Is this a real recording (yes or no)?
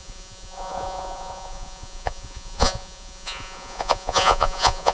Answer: no